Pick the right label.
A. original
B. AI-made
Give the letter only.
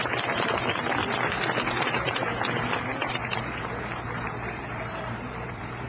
B